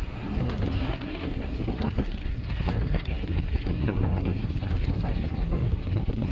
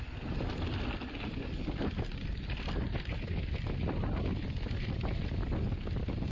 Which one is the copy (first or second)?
first